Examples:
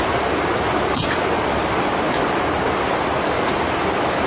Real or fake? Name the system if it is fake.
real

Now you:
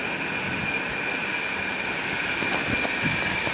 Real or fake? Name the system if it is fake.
real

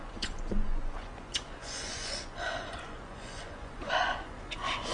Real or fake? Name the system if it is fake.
fake, vocoder, Vocos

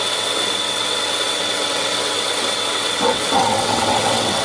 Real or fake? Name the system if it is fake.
fake, vocoder, WaveNeXt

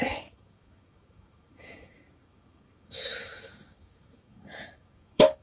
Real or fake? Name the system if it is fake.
fake, autoencoder, DAC-VAE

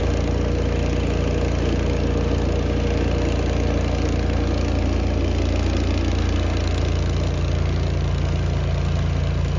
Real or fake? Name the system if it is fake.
real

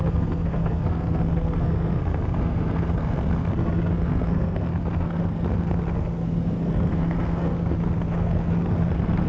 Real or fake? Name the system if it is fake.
fake, codec, SNAC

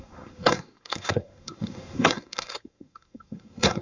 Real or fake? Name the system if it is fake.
fake, codec, SNAC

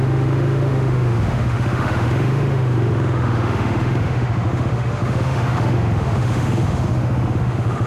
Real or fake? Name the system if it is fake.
fake, autoencoder, DAC-VAE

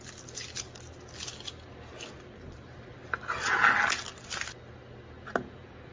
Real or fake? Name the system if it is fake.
real